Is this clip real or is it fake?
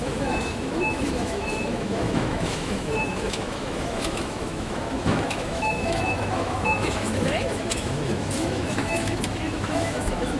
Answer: fake